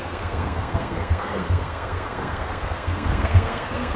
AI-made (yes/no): yes